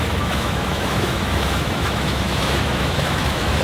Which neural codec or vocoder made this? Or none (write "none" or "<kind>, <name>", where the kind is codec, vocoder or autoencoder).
autoencoder, DAC-VAE